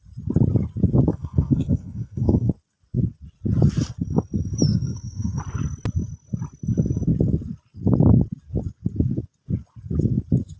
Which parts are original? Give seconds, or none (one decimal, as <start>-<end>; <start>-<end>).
0.0-1.1; 2.5-4.7; 5.4-10.6